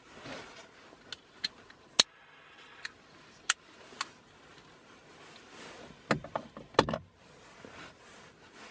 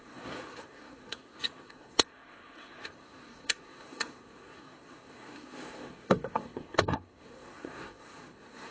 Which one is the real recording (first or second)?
first